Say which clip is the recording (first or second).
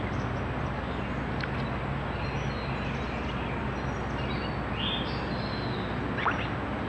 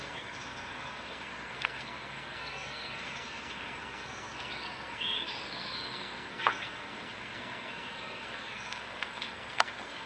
first